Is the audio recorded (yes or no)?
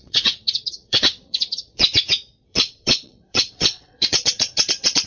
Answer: no